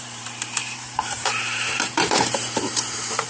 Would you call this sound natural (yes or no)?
no